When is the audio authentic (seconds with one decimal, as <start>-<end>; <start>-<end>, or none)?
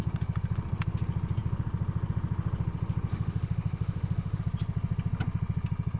0.0-3.1; 4.4-6.0